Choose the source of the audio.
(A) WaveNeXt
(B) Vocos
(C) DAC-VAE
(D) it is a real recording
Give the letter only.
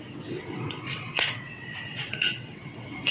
A